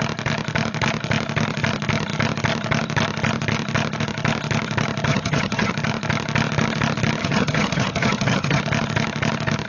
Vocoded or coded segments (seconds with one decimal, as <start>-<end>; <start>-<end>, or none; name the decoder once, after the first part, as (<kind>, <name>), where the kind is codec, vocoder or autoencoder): 5.1-5.7 (vocoder, HiFi-GAN); 7.2-8.6